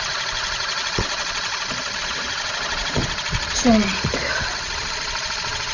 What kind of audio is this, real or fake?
fake